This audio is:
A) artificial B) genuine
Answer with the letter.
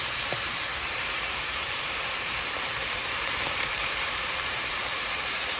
A